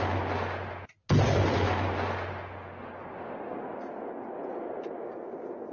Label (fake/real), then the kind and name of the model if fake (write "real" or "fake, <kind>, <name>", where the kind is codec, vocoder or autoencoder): real